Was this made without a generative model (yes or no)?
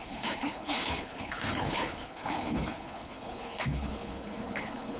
no